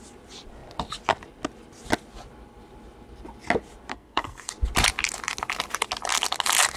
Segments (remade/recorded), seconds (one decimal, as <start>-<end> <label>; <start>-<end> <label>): 0.0-3.9 recorded; 3.9-4.5 remade; 4.5-6.8 recorded